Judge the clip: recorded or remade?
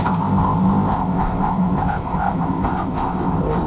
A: remade